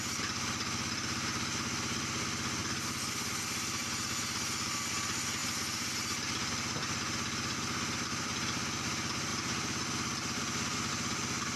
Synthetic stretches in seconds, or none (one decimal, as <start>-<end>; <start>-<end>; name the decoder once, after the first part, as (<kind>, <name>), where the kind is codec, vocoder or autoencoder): none